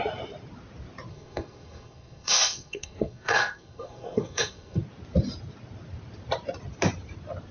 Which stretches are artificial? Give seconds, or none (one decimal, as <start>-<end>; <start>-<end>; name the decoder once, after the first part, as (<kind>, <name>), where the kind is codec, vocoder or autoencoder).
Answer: 1.1-4.8 (codec, SNAC)